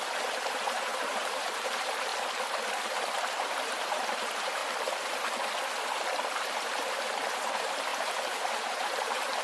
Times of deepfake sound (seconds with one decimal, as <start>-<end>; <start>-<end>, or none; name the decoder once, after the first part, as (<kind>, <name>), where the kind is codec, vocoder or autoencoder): 0.0-2.1 (vocoder, BigVGAN v2); 3.3-4.6; 6.5-9.4